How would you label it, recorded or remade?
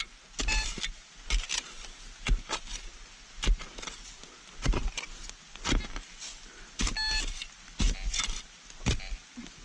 recorded